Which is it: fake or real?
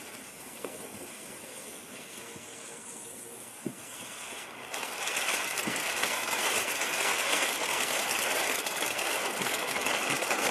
fake